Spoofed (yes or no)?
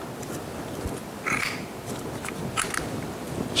no